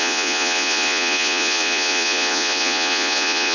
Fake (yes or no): yes